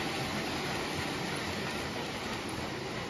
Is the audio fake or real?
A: real